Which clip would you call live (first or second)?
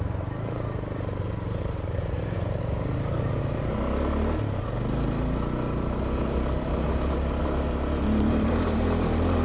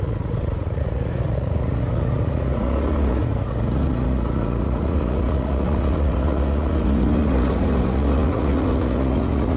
first